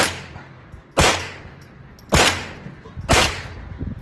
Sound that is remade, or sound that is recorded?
recorded